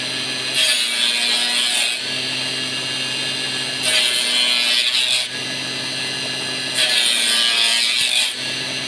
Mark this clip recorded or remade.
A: recorded